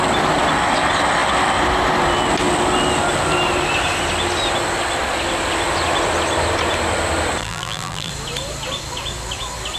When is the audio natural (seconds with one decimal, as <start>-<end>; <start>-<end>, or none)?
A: 0.0-7.4; 8.1-9.8